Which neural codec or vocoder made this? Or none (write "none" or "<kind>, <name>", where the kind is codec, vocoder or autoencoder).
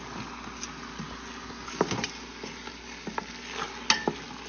none